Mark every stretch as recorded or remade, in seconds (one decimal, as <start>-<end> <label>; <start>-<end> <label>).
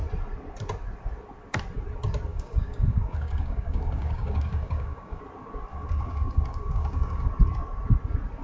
0.0-2.3 recorded; 2.3-5.2 remade; 5.2-5.7 recorded; 5.7-7.3 remade; 7.3-8.4 recorded